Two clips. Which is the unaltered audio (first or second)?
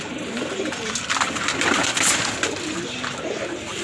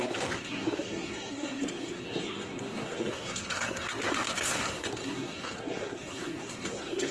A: first